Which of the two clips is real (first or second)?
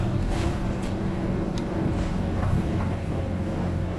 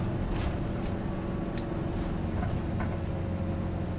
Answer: second